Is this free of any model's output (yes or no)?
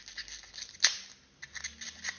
yes